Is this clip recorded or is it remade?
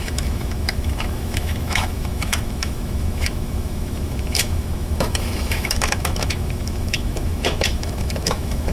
remade